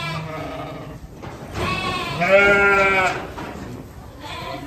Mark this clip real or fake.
real